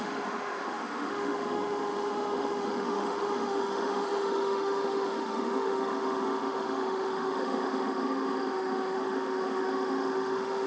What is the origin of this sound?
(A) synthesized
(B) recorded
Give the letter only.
A